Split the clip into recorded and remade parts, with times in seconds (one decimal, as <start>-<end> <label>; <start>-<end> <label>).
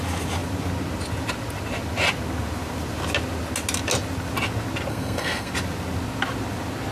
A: 0.0-4.9 recorded; 4.9-5.5 remade; 5.5-6.9 recorded